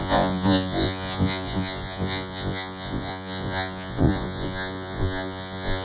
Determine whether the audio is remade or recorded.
remade